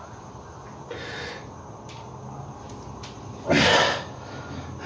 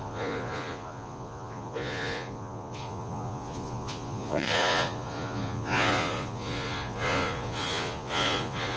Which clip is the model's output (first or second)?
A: second